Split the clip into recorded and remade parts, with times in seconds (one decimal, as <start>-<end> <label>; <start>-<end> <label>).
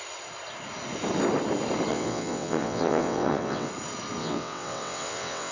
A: 0.0-1.9 recorded; 1.9-3.7 remade; 3.7-4.2 recorded; 4.2-5.5 remade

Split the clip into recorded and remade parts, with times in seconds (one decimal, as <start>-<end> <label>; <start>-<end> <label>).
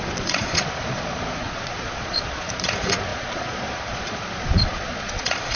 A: 0.0-5.6 remade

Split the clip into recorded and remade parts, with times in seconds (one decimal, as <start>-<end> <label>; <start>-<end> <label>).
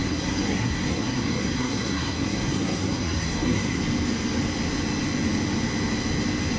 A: 0.0-3.8 remade; 3.8-6.6 recorded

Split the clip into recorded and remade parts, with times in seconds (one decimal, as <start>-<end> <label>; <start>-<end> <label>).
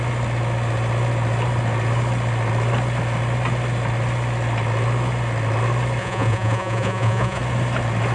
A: 0.0-6.0 recorded; 6.0-7.4 remade; 7.4-8.1 recorded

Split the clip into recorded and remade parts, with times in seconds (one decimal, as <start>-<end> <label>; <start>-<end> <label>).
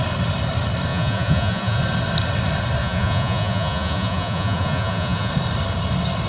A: 0.0-0.9 recorded; 0.9-1.8 remade; 1.8-2.8 recorded; 2.8-5.3 remade; 5.3-6.3 recorded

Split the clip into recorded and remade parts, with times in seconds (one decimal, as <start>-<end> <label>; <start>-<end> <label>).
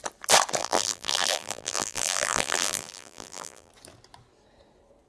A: 0.0-0.6 recorded; 0.6-3.7 remade; 3.7-5.1 recorded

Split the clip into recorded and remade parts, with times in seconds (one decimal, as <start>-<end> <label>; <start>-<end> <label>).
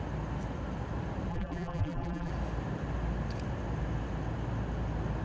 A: 0.0-1.3 recorded; 1.3-2.3 remade; 2.3-5.2 recorded